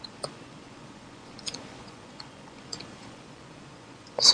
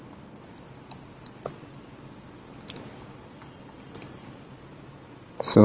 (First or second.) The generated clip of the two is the first